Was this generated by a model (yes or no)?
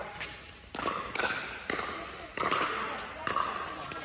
no